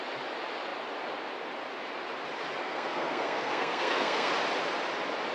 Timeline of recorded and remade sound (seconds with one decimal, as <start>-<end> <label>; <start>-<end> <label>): 0.0-2.6 recorded; 2.6-4.3 remade; 4.3-5.3 recorded